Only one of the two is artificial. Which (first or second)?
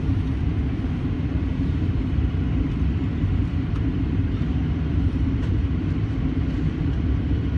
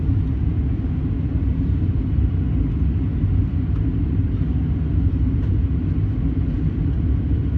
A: first